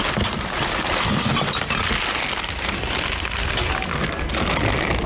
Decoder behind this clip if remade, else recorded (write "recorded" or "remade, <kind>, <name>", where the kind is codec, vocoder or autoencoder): recorded